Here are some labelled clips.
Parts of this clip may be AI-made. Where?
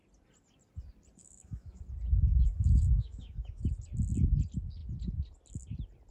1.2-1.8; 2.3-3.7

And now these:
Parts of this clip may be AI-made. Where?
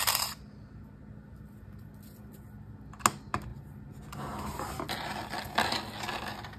none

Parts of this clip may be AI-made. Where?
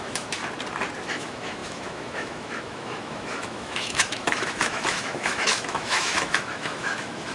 0.0-0.4; 1.0-7.3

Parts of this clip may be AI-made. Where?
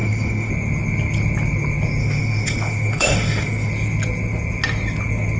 0.0-0.5; 2.0-3.7